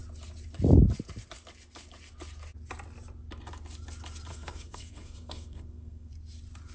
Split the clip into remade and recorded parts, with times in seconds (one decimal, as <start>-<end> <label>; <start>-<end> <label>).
0.0-4.3 recorded; 4.3-6.1 remade; 6.1-6.7 recorded